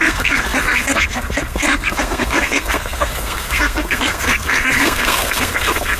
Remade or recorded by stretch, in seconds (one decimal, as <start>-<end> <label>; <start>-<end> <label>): 0.0-6.0 remade